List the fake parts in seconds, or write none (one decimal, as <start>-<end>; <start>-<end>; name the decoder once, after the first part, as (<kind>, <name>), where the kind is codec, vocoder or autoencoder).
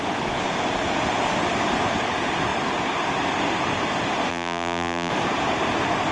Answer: 4.3-5.1 (vocoder, BigVGAN v2)